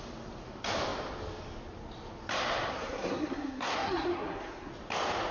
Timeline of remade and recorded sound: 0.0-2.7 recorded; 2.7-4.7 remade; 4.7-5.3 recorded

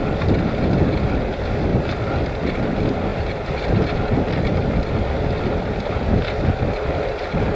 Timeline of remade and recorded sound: 0.0-7.5 recorded